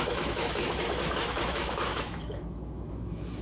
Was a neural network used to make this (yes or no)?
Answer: yes